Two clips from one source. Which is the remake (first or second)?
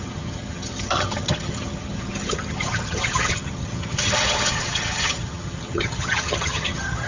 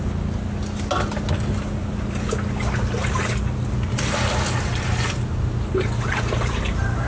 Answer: first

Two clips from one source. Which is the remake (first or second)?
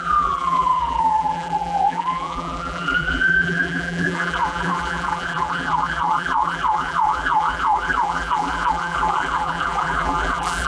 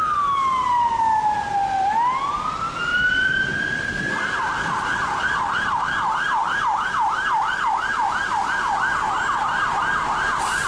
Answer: first